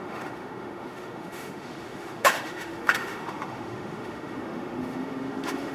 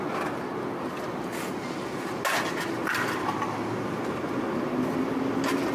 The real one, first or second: second